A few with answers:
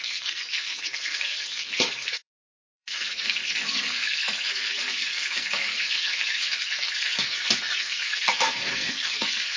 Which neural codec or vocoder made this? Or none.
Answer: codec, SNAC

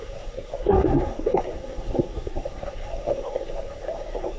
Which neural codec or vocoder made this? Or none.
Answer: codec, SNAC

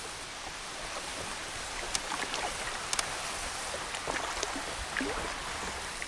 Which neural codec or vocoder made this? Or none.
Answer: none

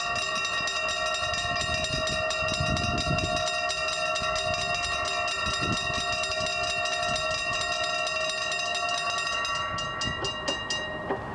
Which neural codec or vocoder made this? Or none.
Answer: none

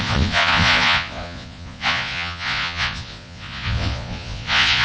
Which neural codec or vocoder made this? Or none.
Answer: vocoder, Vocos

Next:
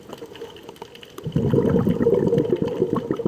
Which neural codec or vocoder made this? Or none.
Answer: none